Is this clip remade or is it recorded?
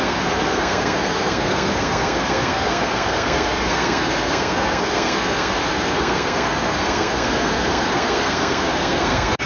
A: remade